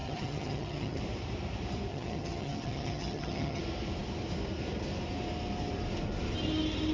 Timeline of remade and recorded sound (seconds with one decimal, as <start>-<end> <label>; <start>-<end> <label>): 0.0-1.0 remade; 1.0-1.9 recorded; 1.9-3.6 remade; 3.6-6.9 recorded